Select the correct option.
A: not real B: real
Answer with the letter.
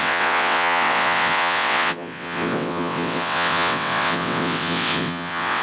A